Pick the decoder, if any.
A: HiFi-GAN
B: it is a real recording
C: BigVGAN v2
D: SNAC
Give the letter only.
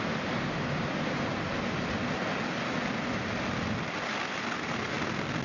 B